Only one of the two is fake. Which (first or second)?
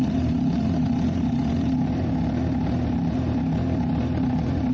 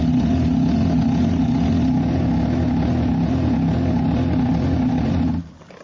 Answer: first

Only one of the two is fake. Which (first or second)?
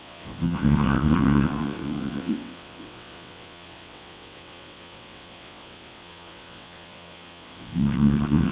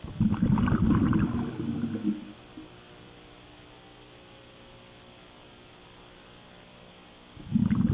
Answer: first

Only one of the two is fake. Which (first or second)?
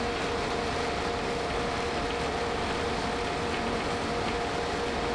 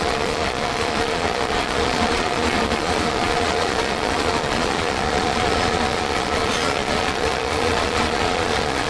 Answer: second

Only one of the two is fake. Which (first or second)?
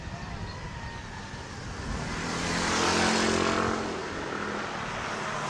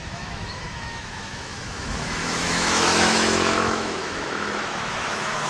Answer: second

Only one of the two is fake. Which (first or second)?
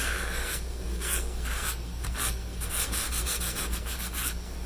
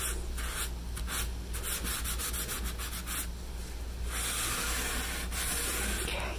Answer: first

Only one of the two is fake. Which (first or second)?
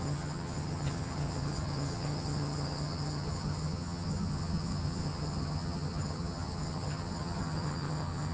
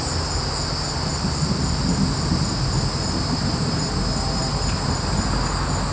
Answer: first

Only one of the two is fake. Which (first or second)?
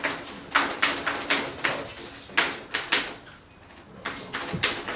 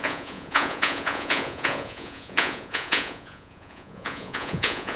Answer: second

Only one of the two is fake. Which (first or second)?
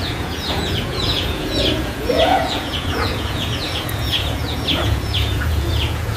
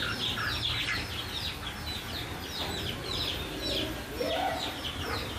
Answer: first